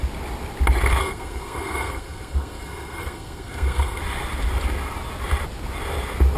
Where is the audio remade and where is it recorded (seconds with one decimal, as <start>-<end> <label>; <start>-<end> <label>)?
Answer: 0.0-1.0 recorded; 1.0-4.0 remade; 4.0-6.4 recorded